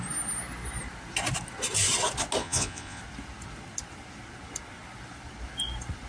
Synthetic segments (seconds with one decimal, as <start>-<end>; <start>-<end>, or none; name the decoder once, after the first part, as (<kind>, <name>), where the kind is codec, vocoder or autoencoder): 2.4-3.0 (vocoder, Vocos)